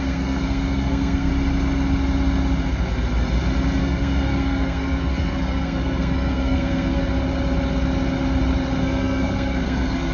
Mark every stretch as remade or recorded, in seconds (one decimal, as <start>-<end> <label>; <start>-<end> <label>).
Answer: 0.0-1.3 remade; 1.3-3.8 recorded; 3.8-7.0 remade; 7.0-8.8 recorded; 8.8-10.1 remade